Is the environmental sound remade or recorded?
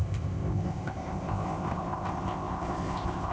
remade